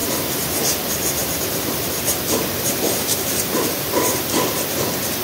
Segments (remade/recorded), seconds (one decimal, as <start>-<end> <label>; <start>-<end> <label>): 0.0-0.6 remade; 0.6-1.2 recorded; 1.2-4.3 remade; 4.3-5.2 recorded